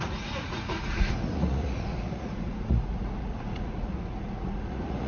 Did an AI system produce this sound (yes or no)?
yes